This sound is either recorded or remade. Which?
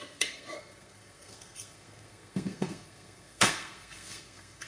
remade